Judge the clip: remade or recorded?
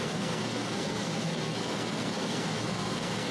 remade